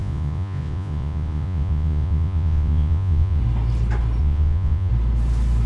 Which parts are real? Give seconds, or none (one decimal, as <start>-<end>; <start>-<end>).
3.4-4.2; 4.9-5.7